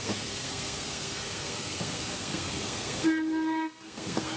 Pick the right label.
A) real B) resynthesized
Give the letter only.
B